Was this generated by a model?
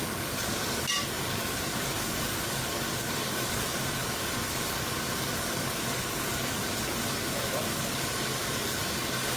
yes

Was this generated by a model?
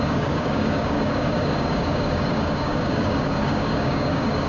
yes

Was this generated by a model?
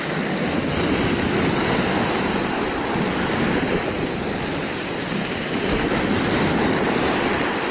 no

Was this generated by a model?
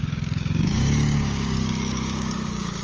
yes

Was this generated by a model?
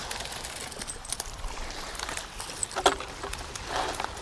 no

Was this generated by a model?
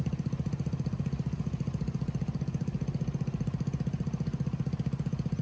no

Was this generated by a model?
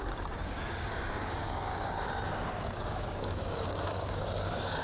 yes